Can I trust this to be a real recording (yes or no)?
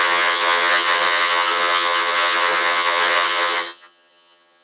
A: no